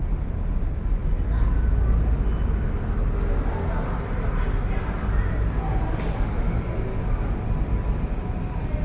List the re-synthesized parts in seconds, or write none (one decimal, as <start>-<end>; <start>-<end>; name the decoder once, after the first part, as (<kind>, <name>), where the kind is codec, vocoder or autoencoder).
none

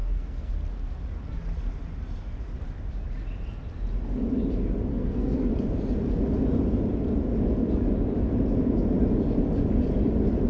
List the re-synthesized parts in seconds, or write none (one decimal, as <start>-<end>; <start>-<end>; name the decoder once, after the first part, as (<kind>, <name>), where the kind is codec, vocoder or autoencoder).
0.0-0.5 (codec, SNAC); 4.9-5.5

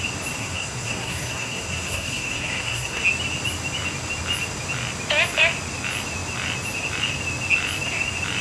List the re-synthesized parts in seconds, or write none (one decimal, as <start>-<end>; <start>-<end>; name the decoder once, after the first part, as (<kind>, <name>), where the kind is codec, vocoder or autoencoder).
0.4-3.0 (codec, SNAC)

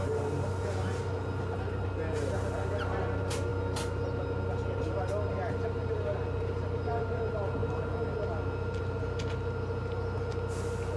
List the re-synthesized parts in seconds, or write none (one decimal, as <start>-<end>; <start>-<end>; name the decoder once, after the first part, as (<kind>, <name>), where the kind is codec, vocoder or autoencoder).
none